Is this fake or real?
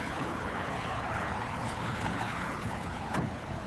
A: fake